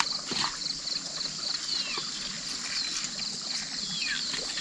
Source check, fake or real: real